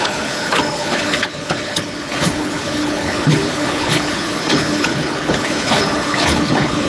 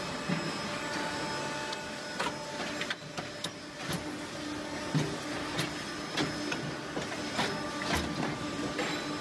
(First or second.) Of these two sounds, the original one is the second